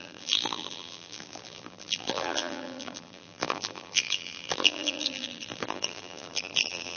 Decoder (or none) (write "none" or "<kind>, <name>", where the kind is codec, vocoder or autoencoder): vocoder, BigVGAN v2